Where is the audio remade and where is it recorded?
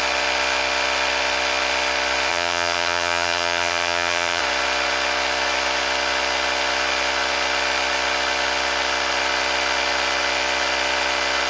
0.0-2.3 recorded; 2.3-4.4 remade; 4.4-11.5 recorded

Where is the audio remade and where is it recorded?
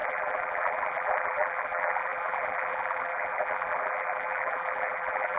0.0-5.4 remade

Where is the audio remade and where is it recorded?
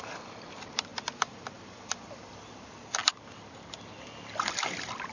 0.0-5.1 remade